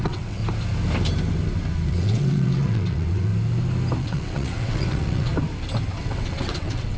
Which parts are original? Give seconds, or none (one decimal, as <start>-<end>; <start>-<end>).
0.4-1.9; 3.3-4.0; 5.3-6.0